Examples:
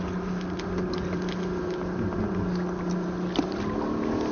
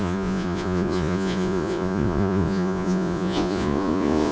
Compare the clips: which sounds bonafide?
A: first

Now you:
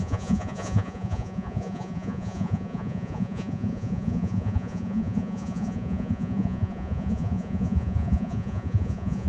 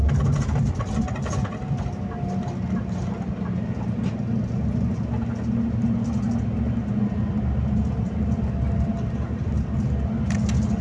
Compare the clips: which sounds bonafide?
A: second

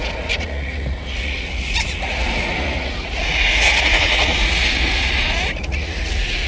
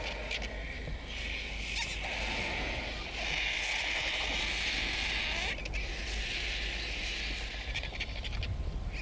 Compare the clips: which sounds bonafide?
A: second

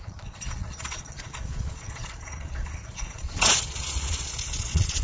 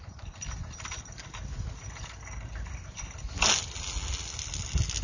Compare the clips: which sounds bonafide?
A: second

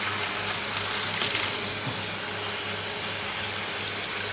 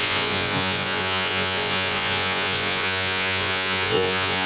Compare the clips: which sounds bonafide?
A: first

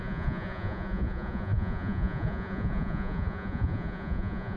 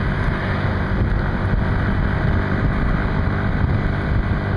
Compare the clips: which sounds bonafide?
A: second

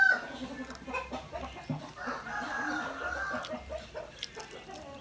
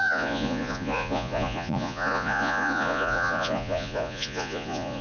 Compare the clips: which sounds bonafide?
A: first